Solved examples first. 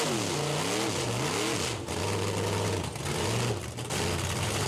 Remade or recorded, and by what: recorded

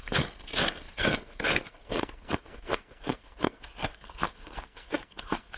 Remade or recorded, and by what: remade, codec, SNAC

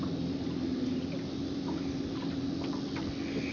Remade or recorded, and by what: recorded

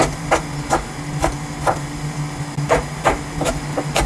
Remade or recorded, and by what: recorded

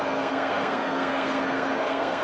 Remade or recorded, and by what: remade, codec, SNAC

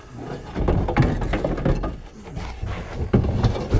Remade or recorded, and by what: recorded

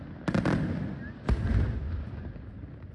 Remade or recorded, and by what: recorded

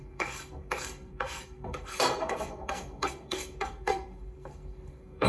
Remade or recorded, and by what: remade, codec, SNAC